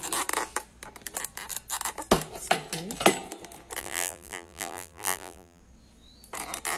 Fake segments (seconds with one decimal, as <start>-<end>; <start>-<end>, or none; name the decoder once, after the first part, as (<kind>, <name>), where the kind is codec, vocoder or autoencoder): 3.8-5.6 (vocoder, BigVGAN v2)